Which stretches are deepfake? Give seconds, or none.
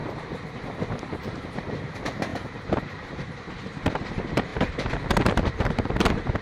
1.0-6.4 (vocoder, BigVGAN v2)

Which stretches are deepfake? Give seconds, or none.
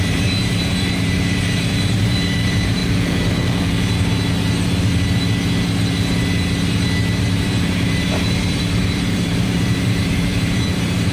0.0-2.8 (vocoder, BigVGAN v2); 7.2-11.1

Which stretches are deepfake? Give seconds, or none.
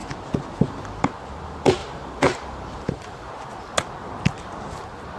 1.8-3.3 (vocoder, BigVGAN v2)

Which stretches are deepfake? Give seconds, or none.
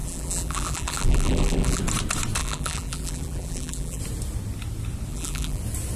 0.0-1.8 (vocoder, BigVGAN v2); 2.4-4.0; 5.1-5.6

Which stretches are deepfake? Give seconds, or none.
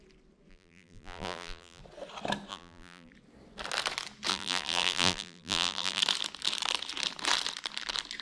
0.5-1.8 (vocoder, BigVGAN v2); 2.5-3.1; 4.3-6.0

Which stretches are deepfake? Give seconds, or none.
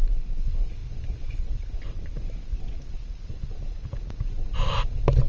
none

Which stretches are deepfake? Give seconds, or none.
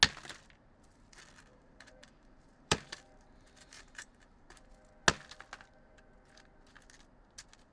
1.5-4.6 (vocoder, BigVGAN v2)